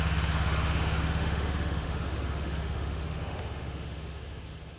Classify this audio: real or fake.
fake